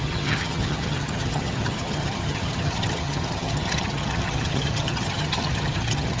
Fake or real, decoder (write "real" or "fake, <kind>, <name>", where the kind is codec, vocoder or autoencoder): fake, vocoder, HiFi-GAN